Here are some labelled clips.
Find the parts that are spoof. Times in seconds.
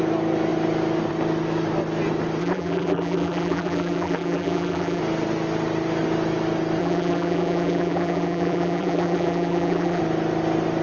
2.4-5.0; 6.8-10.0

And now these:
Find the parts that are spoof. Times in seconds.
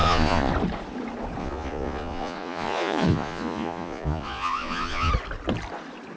0.0-0.5; 1.4-5.1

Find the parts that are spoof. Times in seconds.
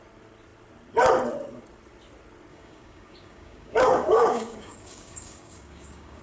2.5-6.2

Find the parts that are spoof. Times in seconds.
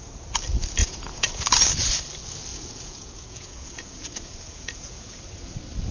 0.8-1.4; 2.5-5.2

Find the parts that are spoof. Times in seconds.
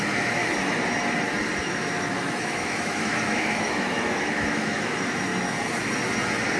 0.0-0.4; 1.6-5.3